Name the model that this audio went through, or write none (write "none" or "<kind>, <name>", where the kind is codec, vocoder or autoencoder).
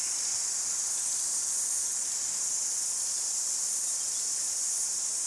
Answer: none